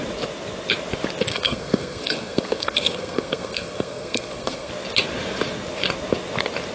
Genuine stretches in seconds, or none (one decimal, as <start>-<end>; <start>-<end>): 0.0-1.3; 4.7-6.7

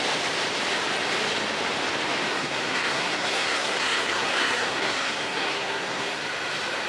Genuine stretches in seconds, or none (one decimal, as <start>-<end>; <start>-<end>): 0.0-2.3; 6.2-6.9

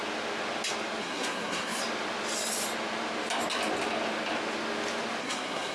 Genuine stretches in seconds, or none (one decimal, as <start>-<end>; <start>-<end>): 0.0-1.0; 1.8-5.2

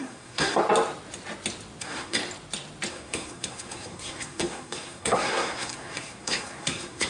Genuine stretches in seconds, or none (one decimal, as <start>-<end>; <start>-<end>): 0.6-1.8; 2.2-2.9

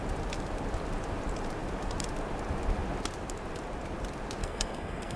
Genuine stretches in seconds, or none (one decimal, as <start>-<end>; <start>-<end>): 0.0-4.4

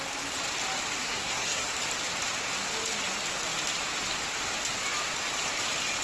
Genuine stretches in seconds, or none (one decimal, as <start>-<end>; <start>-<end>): 0.0-1.0; 1.7-6.0

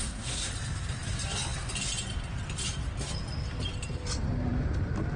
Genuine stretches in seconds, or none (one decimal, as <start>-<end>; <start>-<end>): 0.5-5.2

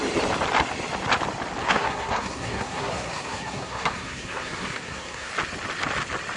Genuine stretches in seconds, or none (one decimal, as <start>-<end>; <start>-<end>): 0.0-1.6; 5.3-6.4